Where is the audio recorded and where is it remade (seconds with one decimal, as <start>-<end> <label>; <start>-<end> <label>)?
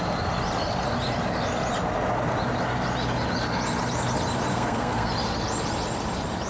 0.0-4.5 recorded; 4.5-5.1 remade; 5.1-6.5 recorded